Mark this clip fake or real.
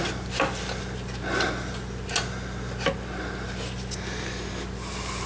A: real